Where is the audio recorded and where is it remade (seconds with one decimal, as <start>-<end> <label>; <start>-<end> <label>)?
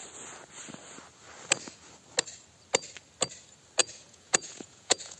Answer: 0.0-3.8 recorded; 3.8-5.2 remade